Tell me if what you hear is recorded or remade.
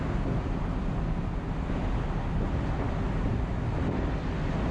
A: recorded